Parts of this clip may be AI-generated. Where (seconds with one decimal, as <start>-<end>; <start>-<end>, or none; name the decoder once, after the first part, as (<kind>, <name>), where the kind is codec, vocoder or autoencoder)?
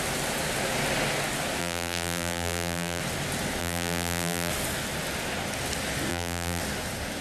1.6-3.0 (vocoder, BigVGAN v2); 3.6-4.5; 6.1-6.6